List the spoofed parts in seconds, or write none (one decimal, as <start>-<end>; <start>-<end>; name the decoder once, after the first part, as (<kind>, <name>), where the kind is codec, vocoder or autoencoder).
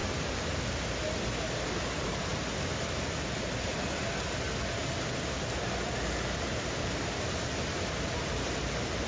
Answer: 0.0-0.6 (vocoder, BigVGAN v2)